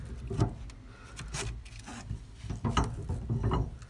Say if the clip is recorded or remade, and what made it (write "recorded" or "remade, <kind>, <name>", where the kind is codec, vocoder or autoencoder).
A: recorded